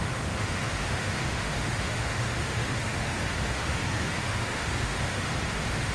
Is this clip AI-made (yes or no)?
yes